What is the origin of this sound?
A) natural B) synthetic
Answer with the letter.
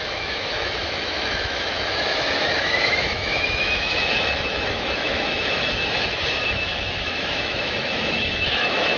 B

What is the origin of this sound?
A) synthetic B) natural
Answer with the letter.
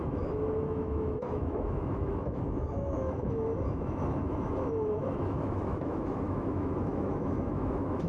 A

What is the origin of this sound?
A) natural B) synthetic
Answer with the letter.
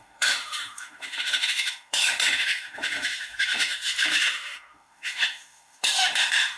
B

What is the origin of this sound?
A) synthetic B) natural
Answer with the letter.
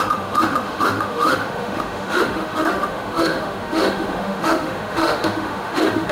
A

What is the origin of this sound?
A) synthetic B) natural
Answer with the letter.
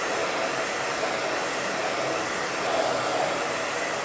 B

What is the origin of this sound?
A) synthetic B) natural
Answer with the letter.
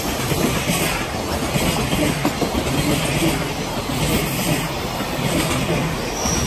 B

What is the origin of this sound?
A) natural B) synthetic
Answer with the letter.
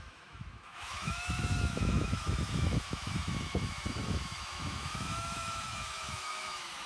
B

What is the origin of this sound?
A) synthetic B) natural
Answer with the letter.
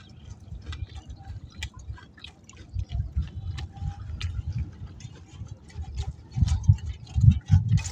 B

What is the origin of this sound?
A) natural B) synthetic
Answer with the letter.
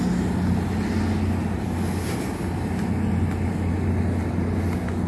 A